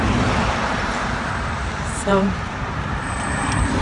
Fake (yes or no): yes